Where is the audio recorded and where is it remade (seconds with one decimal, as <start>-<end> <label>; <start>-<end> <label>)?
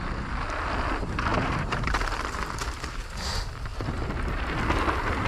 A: 0.0-1.3 recorded; 1.3-1.9 remade; 1.9-5.3 recorded